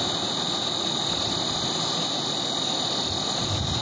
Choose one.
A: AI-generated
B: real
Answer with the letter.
B